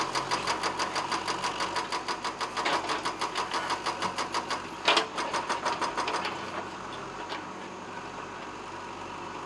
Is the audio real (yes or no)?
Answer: yes